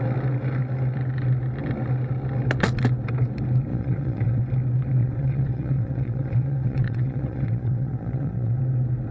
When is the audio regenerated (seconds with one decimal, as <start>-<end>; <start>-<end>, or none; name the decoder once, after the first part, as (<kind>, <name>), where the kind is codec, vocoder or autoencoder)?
3.7-4.4 (vocoder, WaveNeXt); 5.0-8.6